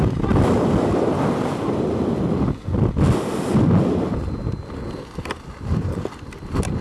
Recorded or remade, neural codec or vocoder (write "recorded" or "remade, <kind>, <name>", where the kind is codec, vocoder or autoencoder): recorded